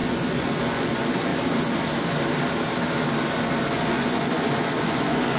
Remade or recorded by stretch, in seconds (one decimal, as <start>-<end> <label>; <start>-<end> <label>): 0.0-1.3 remade; 1.3-3.7 recorded; 3.7-5.4 remade